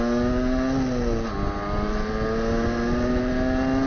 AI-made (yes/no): no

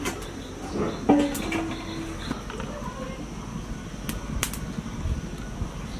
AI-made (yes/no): no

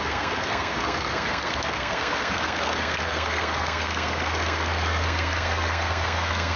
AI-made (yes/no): yes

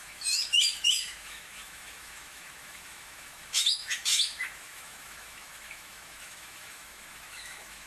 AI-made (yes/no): yes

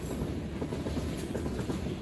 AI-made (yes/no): no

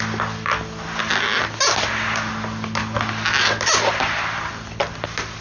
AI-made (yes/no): no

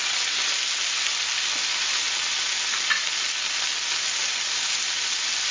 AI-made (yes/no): no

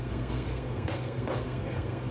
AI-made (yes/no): yes